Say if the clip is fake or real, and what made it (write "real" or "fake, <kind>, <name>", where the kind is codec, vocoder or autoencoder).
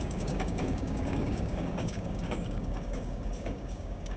fake, codec, DAC